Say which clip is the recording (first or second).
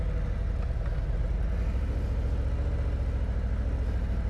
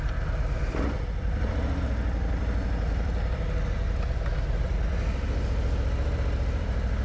first